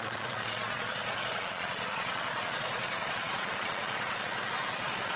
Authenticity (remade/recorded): remade